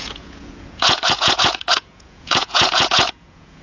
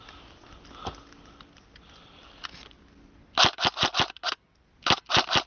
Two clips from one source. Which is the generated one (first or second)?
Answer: first